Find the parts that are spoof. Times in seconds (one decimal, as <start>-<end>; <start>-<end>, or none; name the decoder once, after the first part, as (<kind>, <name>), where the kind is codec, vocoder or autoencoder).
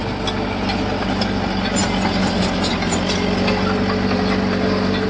none